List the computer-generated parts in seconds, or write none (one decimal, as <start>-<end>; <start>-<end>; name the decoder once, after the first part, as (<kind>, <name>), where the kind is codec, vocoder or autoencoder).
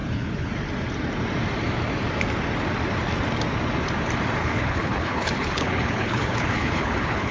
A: 0.0-0.5 (codec, HILCodec); 4.4-7.3